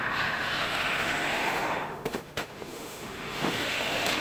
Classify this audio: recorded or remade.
remade